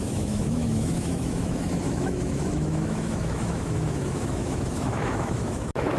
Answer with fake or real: fake